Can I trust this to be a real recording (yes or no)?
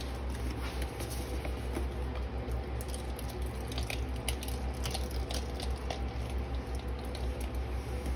yes